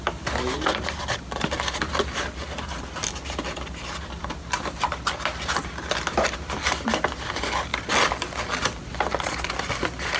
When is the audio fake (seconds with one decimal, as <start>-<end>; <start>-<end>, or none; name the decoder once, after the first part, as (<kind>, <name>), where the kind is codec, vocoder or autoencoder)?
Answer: none